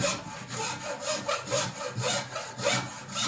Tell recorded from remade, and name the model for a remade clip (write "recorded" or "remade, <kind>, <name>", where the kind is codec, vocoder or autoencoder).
recorded